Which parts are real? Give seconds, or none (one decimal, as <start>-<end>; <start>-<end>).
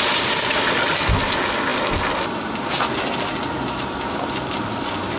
0.0-1.7; 4.8-5.2